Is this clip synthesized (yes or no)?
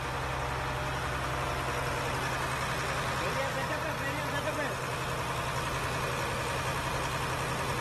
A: no